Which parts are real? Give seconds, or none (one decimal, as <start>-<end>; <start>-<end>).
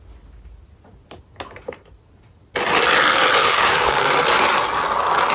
0.0-3.4; 4.1-5.3